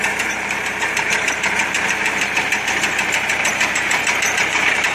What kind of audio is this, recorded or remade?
remade